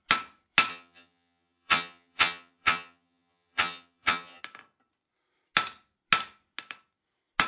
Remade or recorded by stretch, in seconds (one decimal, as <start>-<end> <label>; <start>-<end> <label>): 0.0-0.7 recorded; 0.7-4.4 remade; 4.4-7.5 recorded